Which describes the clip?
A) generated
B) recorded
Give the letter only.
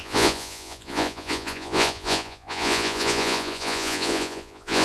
A